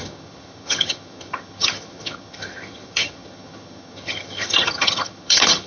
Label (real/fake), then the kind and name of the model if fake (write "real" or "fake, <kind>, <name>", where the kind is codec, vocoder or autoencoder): fake, vocoder, HiFi-GAN